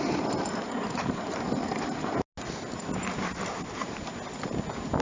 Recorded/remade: recorded